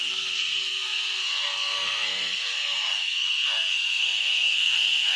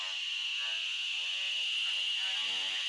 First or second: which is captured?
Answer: second